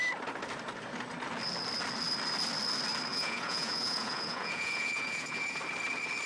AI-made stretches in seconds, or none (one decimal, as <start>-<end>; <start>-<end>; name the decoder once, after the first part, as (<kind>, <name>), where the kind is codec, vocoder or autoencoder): 3.1-5.6 (vocoder, Vocos)